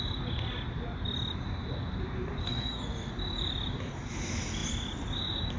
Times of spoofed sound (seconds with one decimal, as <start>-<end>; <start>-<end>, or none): 2.4-3.1